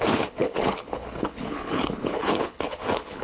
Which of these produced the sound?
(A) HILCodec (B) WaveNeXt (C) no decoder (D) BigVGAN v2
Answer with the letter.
A